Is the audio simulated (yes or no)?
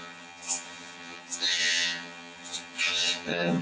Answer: yes